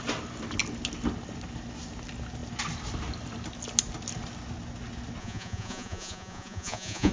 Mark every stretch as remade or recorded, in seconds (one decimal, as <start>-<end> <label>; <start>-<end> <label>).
0.0-5.2 recorded; 5.2-7.1 remade